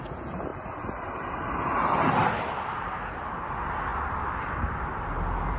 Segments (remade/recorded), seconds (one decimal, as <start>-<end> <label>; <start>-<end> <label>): 0.0-0.5 recorded; 0.5-1.6 remade; 1.6-5.6 recorded